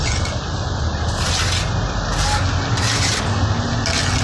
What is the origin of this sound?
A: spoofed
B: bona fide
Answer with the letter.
B